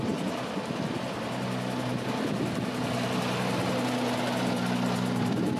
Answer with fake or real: real